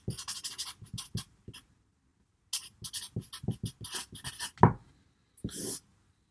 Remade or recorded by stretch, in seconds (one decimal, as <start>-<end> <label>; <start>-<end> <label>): 0.0-6.3 recorded